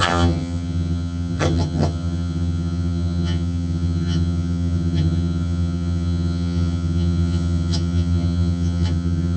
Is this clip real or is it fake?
fake